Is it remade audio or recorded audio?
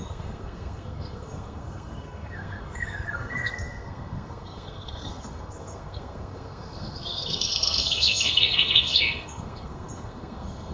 remade